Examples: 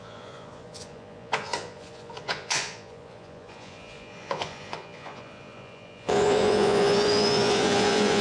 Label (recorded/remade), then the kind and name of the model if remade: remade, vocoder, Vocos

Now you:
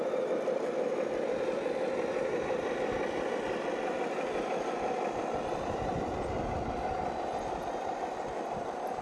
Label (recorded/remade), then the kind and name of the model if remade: remade, vocoder, BigVGAN v2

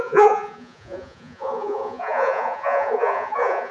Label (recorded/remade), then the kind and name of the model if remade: remade, vocoder, Vocos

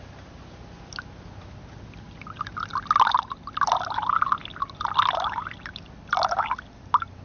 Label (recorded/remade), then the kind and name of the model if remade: recorded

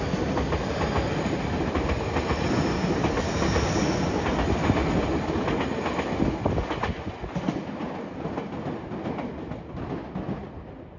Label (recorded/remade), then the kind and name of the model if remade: recorded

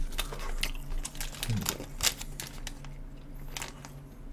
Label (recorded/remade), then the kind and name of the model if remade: recorded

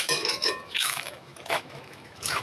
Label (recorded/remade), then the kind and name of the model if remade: remade, autoencoder, DAC-VAE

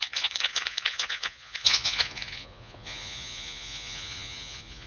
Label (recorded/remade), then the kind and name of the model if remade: remade, vocoder, Vocos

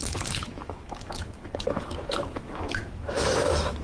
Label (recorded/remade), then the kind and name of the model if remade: remade, autoencoder, DAC-VAE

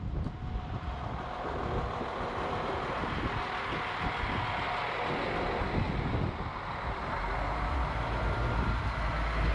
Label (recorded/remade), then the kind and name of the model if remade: recorded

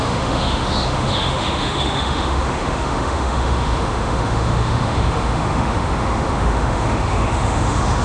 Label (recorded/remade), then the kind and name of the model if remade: remade, autoencoder, DAC-VAE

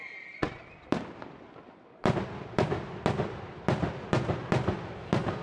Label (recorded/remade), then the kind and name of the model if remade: recorded